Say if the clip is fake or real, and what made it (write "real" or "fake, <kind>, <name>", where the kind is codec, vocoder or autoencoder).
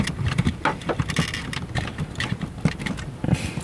real